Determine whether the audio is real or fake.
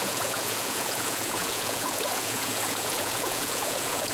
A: fake